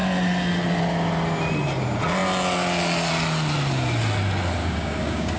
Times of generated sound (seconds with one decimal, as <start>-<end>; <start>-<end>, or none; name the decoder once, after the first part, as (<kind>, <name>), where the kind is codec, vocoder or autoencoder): 4.6-5.4 (codec, DAC)